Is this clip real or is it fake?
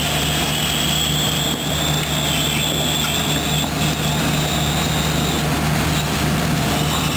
real